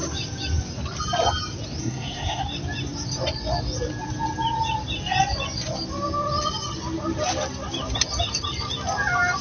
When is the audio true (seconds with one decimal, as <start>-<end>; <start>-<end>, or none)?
0.0-1.8; 2.4-9.4